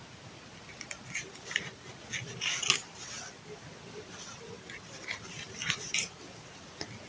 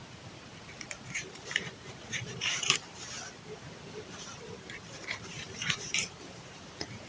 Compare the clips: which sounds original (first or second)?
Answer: first